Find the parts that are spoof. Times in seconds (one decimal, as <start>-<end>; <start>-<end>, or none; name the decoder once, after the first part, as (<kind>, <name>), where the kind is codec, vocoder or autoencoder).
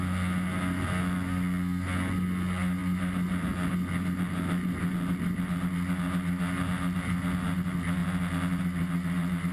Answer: none